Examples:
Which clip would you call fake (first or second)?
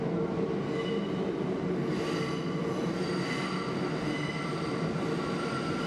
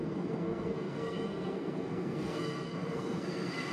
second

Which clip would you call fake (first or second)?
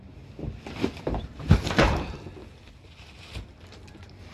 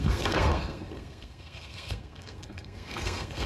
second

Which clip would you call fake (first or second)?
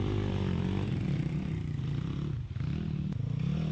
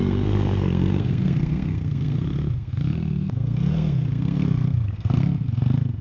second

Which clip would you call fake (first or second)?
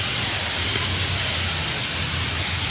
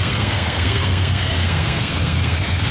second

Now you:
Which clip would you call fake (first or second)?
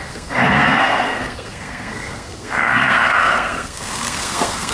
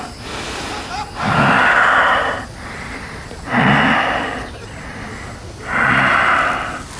first